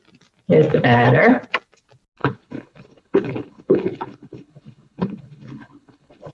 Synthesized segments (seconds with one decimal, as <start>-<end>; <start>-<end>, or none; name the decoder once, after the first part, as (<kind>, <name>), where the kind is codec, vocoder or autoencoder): 0.7-1.4 (codec, HILCodec); 2.2-6.3